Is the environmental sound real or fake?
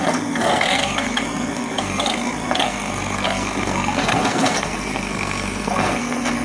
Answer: fake